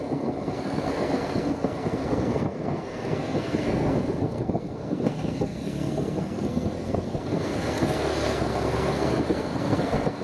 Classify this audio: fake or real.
fake